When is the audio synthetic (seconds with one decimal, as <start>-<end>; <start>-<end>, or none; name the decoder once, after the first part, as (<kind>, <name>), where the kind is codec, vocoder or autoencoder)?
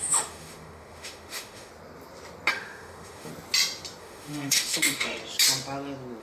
0.0-1.7 (autoencoder, DAC-VAE); 2.5-3.3; 4.0-5.2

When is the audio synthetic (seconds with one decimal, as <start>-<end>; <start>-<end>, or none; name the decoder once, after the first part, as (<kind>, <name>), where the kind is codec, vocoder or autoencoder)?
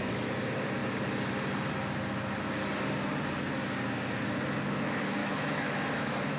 5.2-6.4 (autoencoder, DAC-VAE)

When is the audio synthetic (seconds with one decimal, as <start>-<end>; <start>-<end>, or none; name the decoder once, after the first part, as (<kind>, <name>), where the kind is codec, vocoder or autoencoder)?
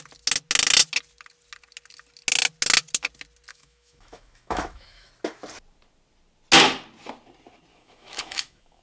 3.5-5.1 (autoencoder, DAC-VAE); 7.7-8.8